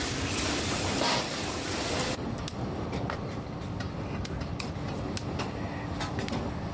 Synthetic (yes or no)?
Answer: no